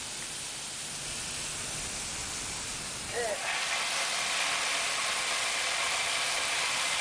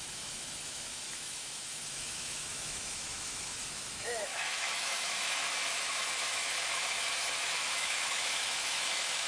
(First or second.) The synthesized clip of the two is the second